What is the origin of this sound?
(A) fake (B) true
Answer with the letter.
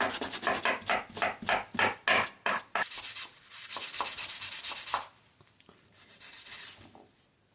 B